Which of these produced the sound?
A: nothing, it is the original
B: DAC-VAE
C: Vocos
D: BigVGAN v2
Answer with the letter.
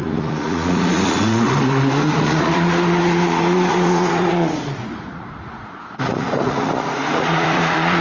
C